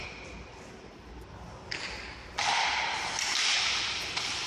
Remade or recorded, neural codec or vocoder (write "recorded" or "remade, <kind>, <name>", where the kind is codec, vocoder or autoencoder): recorded